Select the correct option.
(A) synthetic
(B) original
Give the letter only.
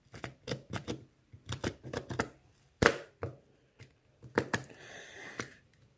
A